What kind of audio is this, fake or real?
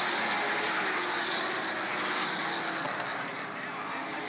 real